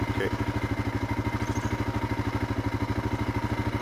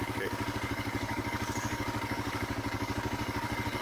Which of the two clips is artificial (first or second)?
second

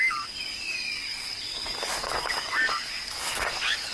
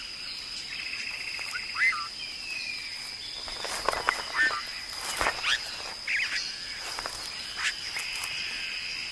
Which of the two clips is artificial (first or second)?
first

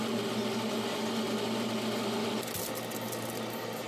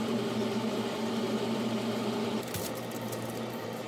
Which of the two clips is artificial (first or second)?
second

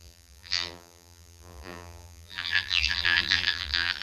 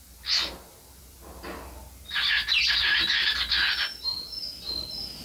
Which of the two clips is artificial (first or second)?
first